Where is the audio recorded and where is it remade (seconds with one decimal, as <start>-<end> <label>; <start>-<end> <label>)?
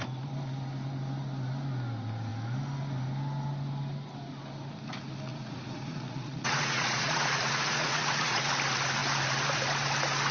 0.0-5.3 recorded; 5.3-8.5 remade; 8.5-10.3 recorded